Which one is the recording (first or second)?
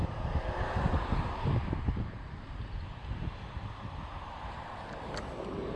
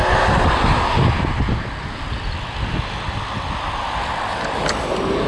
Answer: second